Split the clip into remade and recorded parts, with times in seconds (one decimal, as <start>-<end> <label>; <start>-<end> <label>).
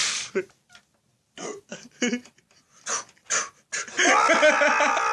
0.0-0.8 remade; 0.8-1.7 recorded; 1.7-2.2 remade; 2.2-5.1 recorded